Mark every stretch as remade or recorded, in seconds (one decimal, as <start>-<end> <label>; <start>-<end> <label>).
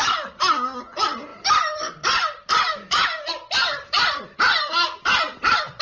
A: 0.0-1.3 recorded; 1.3-4.7 remade; 4.7-5.8 recorded